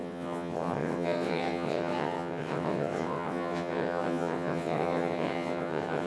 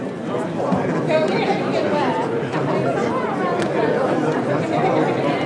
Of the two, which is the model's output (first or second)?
first